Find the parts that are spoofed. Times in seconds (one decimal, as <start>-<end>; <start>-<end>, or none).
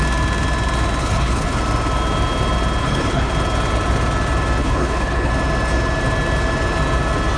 1.0-1.6; 2.8-3.3; 4.6-5.3